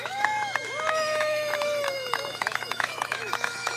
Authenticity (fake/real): fake